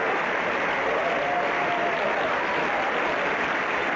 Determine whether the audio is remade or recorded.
recorded